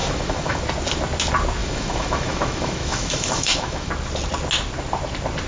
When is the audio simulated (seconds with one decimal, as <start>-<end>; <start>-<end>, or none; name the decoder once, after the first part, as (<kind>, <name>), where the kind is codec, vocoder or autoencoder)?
0.0-0.6 (autoencoder, DAC-VAE); 1.6-3.9